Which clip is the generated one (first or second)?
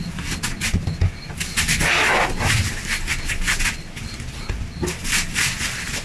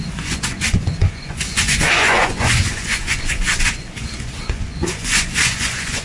second